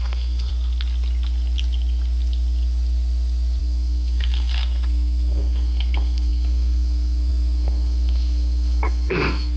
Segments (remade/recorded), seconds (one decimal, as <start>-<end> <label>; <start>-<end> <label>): 0.0-0.5 remade; 0.5-3.6 recorded; 3.6-9.6 remade